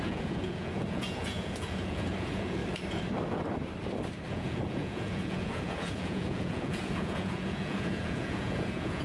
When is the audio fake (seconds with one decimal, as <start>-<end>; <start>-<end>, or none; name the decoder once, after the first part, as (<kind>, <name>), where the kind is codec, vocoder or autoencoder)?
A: 0.0-2.6 (vocoder, Vocos); 4.3-9.0